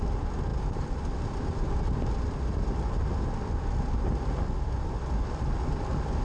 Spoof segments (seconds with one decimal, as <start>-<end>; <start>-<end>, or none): none